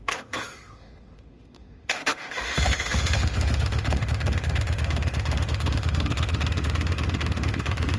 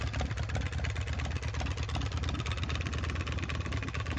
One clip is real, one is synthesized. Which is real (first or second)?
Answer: second